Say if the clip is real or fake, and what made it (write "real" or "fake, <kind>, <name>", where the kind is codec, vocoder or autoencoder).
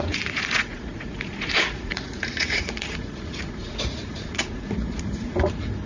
fake, vocoder, Vocos